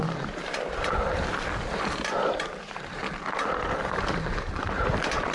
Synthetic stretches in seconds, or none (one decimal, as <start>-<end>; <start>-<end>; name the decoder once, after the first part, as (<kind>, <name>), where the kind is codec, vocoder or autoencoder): 0.0-5.3 (vocoder, BigVGAN v2)